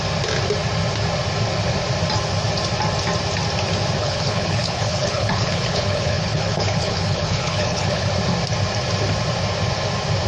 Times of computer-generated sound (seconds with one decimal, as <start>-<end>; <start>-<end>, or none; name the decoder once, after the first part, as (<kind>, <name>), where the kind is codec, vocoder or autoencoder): 4.0-8.1 (codec, HILCodec)